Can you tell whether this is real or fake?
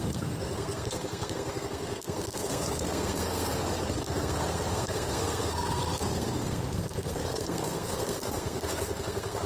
fake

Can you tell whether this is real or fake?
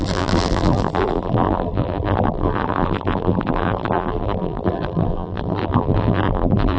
fake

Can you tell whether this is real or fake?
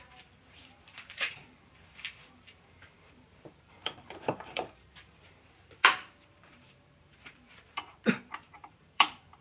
fake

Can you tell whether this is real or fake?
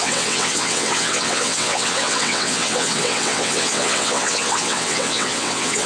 fake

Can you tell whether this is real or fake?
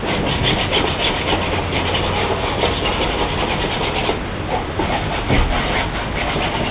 real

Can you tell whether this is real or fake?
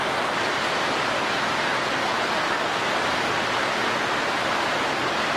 real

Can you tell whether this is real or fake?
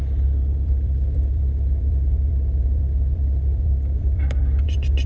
fake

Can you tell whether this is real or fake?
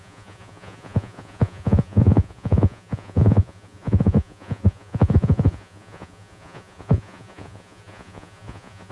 fake